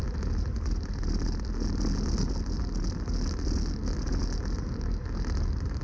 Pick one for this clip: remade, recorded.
recorded